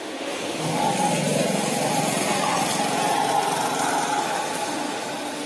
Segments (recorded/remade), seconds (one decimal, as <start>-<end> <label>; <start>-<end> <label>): 0.0-0.9 remade; 0.9-4.2 recorded; 4.2-5.5 remade